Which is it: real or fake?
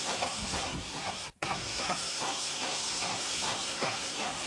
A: fake